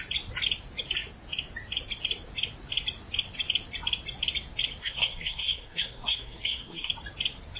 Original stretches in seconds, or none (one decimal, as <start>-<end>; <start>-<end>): 0.0-4.8; 6.9-7.6